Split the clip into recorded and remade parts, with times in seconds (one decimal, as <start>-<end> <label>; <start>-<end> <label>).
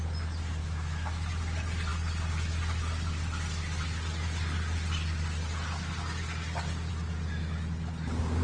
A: 0.0-0.6 recorded; 0.6-1.3 remade; 1.3-8.4 recorded